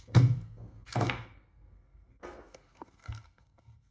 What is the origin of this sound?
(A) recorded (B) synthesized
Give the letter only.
B